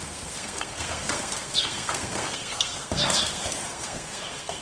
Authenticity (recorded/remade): remade